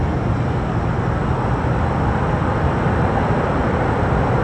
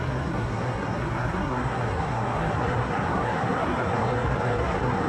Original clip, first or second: first